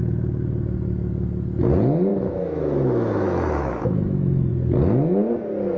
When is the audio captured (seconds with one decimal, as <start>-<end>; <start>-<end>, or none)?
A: 0.0-2.1; 4.5-5.8